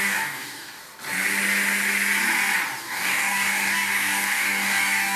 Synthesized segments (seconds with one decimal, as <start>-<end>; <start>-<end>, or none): 0.0-0.8; 2.8-5.2